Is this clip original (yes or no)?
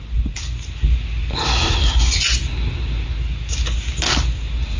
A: yes